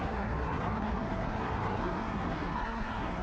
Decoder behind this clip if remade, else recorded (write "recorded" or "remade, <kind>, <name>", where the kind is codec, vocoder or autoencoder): remade, codec, SNAC